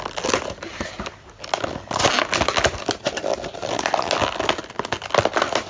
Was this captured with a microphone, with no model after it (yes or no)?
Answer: yes